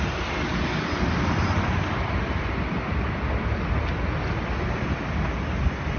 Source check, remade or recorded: recorded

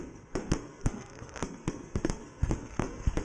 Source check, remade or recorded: remade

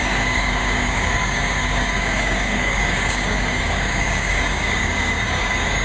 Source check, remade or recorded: remade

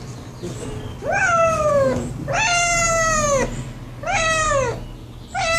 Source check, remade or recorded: recorded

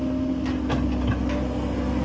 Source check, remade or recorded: recorded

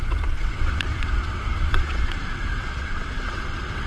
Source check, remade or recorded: remade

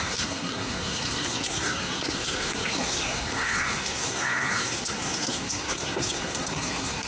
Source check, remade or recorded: remade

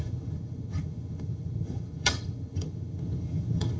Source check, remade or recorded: remade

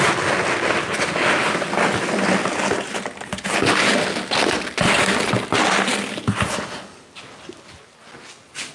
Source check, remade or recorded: recorded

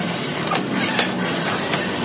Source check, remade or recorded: recorded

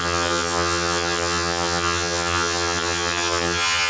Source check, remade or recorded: remade